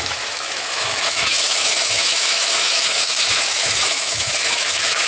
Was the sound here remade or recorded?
remade